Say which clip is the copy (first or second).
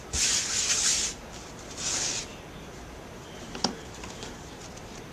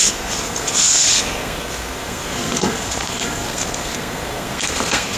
second